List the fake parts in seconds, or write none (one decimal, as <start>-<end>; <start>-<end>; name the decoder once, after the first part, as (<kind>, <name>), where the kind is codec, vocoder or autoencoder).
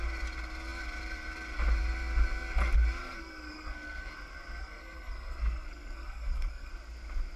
3.0-4.1 (codec, SNAC); 4.6-6.7